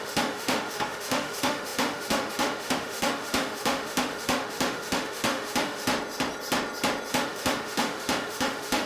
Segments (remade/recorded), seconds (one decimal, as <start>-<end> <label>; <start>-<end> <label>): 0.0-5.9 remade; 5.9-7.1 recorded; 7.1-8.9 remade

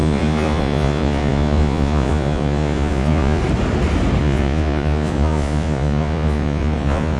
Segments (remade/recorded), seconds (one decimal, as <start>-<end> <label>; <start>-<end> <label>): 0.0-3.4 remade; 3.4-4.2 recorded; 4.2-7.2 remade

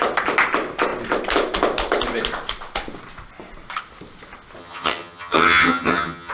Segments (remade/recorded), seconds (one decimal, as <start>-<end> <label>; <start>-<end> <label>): 0.0-4.6 recorded; 4.6-6.3 remade